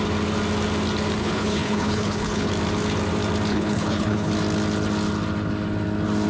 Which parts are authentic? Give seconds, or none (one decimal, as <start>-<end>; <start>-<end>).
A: 0.0-1.2; 2.5-3.5; 4.3-6.3